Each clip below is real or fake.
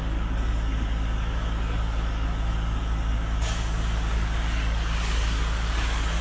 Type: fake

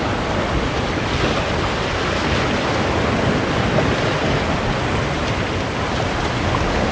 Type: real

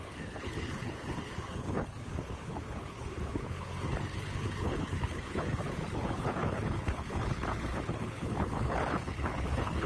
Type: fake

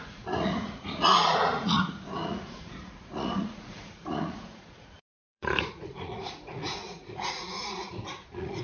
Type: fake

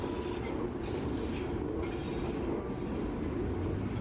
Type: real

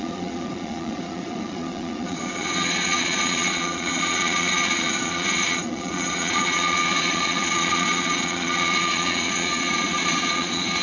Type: fake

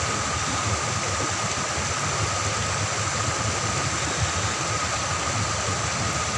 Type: real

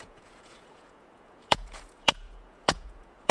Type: fake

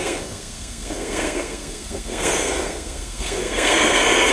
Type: fake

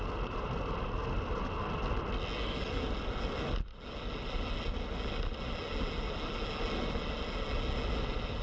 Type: real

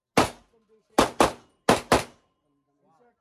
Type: real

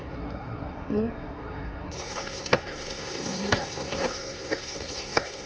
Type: fake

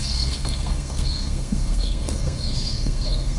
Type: fake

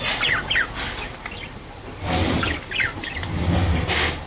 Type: real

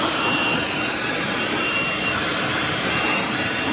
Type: fake